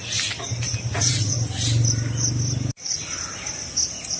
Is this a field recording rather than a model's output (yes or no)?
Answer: yes